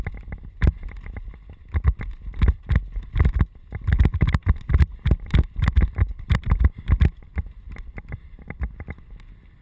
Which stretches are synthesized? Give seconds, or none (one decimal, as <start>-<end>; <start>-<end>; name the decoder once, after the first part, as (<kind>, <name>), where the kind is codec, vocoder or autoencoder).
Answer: 6.1-9.0 (vocoder, BigVGAN v2)